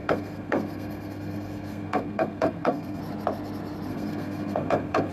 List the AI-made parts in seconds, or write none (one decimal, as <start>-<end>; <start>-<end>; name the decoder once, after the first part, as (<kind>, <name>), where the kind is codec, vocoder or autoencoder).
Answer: 0.0-3.0 (codec, SNAC); 3.9-5.1